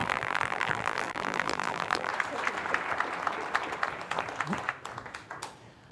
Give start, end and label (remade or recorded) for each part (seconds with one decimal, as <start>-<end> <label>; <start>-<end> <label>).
0.0-2.1 remade; 2.1-5.9 recorded